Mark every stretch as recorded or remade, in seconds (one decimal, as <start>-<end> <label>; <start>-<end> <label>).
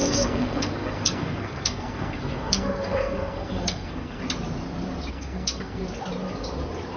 0.0-4.2 remade; 4.2-5.1 recorded; 5.1-5.8 remade; 5.8-7.0 recorded